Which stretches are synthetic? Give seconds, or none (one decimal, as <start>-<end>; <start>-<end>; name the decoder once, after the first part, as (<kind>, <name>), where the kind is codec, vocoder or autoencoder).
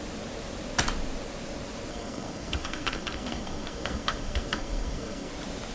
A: 1.9-5.3 (codec, SNAC)